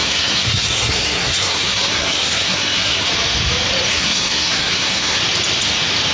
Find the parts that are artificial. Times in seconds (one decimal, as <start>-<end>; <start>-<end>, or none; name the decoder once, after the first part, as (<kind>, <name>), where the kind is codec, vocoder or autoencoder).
0.0-3.1 (codec, SNAC); 3.9-5.2